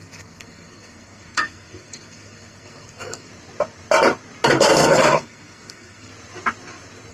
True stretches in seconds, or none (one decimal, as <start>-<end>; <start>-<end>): 3.3-4.5; 6.1-7.1